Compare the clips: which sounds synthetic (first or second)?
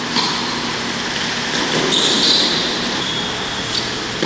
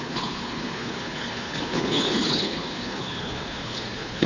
second